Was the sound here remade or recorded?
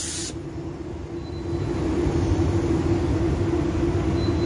recorded